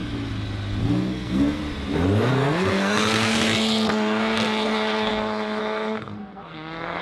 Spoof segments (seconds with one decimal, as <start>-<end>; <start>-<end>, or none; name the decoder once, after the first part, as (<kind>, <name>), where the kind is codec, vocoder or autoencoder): 0.8-1.6 (codec, SNAC); 2.3-7.0